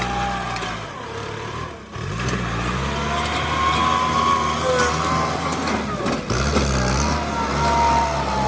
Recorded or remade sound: recorded